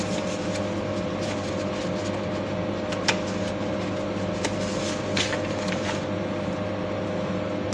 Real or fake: real